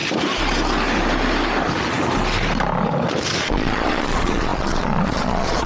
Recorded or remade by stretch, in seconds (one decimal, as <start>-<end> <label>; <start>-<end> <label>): 0.0-3.4 recorded; 3.4-5.7 remade